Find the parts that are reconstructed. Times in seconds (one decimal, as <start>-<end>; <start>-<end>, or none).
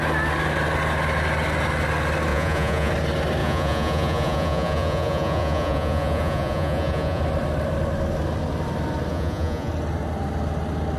2.3-2.9; 3.4-7.2; 9.1-9.7